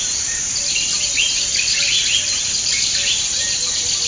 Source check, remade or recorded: recorded